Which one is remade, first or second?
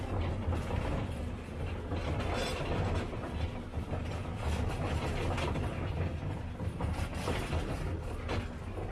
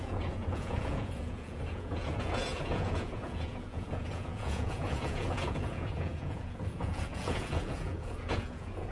second